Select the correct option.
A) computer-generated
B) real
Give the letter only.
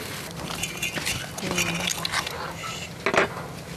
B